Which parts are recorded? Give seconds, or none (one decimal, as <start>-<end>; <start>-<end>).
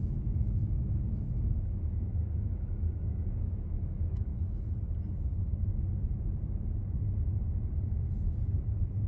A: 4.3-9.1